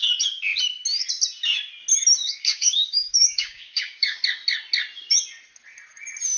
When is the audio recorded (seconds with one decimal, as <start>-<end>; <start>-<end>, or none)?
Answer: 0.0-2.2; 4.2-6.4